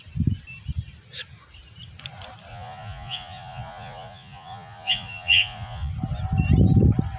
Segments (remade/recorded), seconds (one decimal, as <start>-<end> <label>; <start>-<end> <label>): 0.0-2.5 recorded; 2.5-5.9 remade; 5.9-7.2 recorded